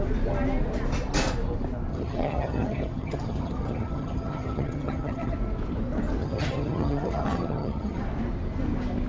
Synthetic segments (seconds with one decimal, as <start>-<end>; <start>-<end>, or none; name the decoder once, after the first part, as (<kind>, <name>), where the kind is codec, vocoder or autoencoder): 1.9-5.3 (vocoder, HiFi-GAN); 6.2-8.0